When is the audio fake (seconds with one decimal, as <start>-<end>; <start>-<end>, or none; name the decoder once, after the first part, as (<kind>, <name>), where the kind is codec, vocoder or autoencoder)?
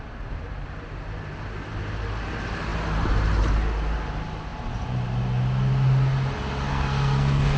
6.7-7.6 (codec, SNAC)